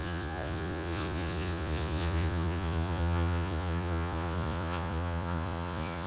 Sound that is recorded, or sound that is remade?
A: remade